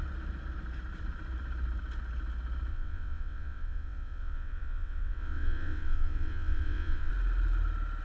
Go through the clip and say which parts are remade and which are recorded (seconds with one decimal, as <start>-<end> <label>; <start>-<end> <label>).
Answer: 0.0-2.7 recorded; 2.7-7.1 remade; 7.1-8.0 recorded